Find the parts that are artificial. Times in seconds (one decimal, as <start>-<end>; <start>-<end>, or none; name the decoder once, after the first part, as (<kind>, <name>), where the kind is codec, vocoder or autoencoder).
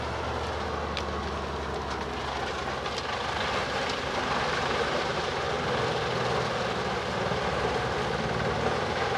3.6-5.3 (vocoder, BigVGAN v2)